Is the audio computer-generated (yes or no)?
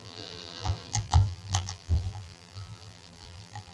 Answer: yes